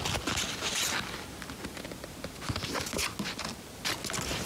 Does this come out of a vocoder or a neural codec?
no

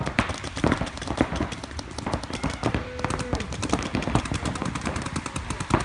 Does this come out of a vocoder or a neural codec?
yes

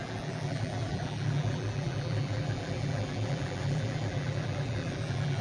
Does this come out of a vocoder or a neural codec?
yes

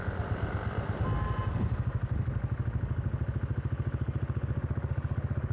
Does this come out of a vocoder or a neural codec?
no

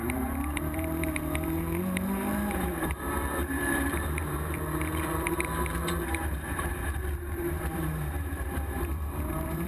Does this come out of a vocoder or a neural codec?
yes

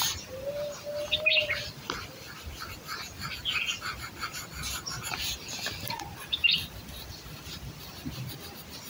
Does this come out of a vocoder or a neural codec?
no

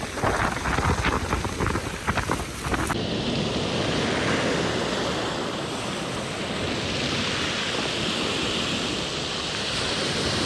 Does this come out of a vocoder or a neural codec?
no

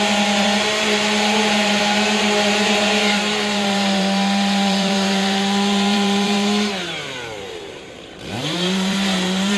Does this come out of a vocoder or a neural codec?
yes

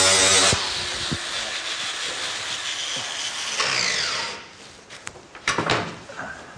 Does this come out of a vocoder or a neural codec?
no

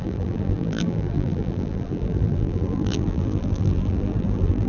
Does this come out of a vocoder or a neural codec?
yes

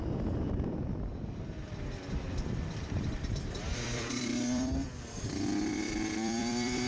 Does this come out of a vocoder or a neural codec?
yes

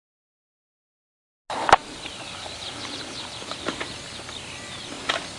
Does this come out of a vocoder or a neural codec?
no